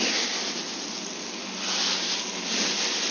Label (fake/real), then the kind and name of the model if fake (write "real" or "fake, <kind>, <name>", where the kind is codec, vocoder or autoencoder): real